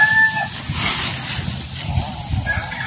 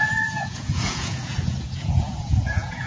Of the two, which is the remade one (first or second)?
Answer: second